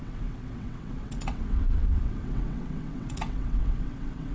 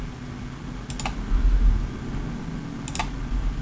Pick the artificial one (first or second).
first